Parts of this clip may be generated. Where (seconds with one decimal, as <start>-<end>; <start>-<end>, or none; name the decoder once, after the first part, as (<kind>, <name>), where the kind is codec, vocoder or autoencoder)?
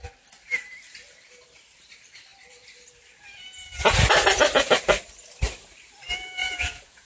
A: 6.4-7.1 (vocoder, Vocos)